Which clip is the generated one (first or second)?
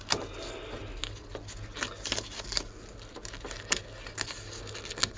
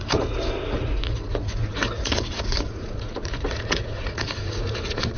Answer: second